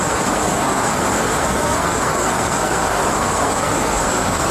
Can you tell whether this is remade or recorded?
remade